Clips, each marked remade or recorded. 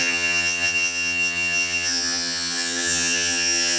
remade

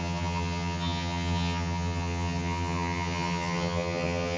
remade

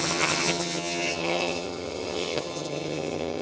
remade